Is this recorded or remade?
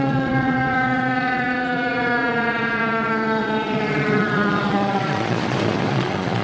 remade